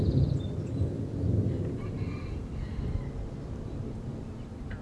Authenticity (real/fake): real